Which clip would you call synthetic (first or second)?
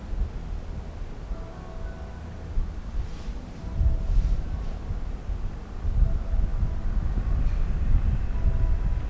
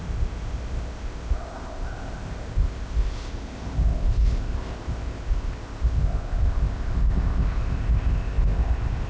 second